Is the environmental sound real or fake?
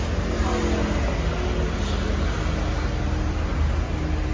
real